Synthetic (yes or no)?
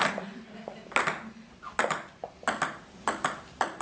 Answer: no